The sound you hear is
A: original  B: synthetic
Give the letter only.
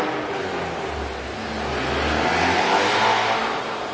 A